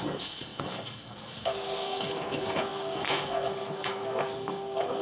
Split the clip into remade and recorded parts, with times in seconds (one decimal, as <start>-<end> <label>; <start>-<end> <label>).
0.0-5.0 remade